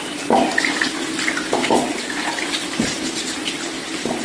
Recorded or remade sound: recorded